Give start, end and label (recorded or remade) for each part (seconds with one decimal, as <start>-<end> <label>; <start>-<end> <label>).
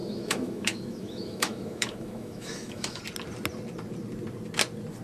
0.0-3.0 remade; 3.0-5.0 recorded